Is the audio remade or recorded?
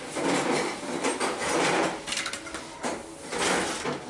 recorded